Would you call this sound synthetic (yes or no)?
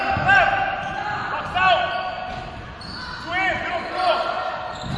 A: no